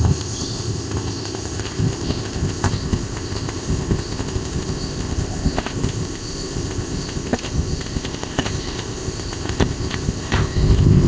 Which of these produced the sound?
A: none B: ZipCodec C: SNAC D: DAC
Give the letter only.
B